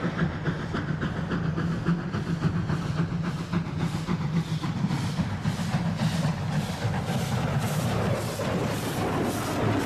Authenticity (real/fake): real